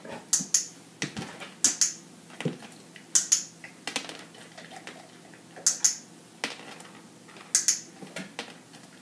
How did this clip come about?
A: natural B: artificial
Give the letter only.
A